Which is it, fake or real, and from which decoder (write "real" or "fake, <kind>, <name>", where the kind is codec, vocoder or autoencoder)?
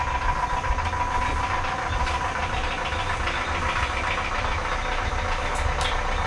real